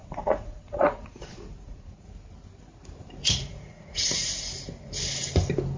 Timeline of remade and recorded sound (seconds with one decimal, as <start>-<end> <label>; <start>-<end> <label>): 0.0-2.1 remade; 2.1-3.2 recorded; 3.2-4.0 remade; 4.0-5.8 recorded